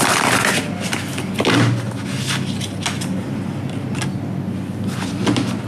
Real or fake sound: real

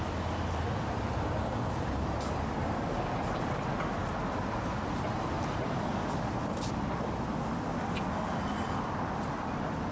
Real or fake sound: real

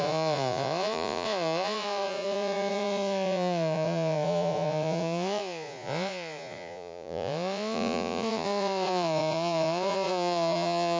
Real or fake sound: fake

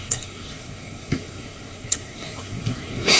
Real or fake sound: fake